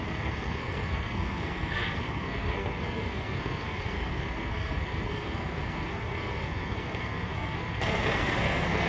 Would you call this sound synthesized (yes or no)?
yes